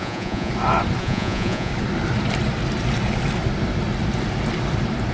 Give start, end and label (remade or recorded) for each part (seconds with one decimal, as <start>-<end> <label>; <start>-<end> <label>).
0.0-0.5 remade; 0.5-1.0 recorded; 1.0-1.7 remade; 1.7-5.1 recorded

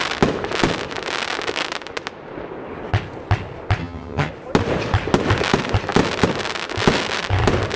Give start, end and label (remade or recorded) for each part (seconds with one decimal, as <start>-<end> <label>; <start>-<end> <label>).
0.0-3.8 recorded; 3.8-4.3 remade; 4.3-7.8 recorded

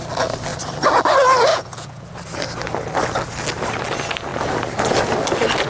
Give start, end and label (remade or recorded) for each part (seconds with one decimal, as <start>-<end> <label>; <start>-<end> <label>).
0.0-1.5 recorded; 1.5-2.1 remade; 2.1-5.7 recorded

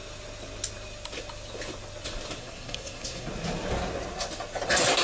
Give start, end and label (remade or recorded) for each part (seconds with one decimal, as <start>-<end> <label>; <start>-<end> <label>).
0.0-2.4 recorded; 2.4-3.3 remade; 3.3-5.0 recorded

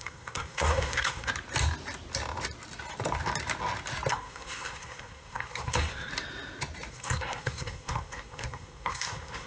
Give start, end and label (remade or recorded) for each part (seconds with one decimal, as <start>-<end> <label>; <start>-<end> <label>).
0.0-1.3 remade; 1.3-4.1 recorded; 4.1-6.1 remade; 6.1-6.9 recorded; 6.9-9.5 remade

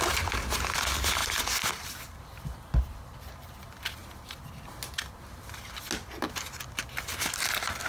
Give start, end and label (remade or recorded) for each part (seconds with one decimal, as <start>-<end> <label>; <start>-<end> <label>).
0.0-7.9 recorded

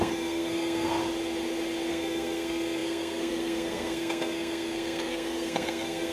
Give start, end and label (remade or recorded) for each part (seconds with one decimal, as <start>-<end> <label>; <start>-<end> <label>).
0.0-1.0 remade; 1.0-1.9 recorded; 1.9-6.1 remade